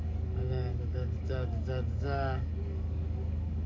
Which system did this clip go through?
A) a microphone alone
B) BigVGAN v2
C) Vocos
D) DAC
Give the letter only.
D